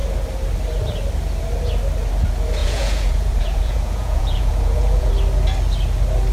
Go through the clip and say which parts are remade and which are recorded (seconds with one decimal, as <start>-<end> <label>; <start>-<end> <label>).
0.0-2.6 recorded; 2.6-5.1 remade; 5.1-6.3 recorded